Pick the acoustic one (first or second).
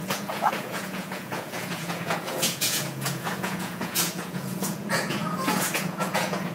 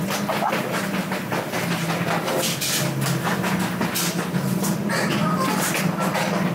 second